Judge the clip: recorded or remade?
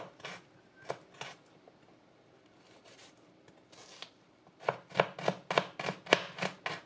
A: recorded